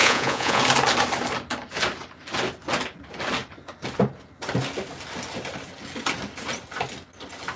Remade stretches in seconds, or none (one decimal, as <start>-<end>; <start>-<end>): 0.0-0.6